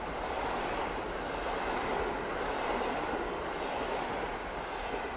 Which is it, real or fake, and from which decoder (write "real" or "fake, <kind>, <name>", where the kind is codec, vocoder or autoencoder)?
real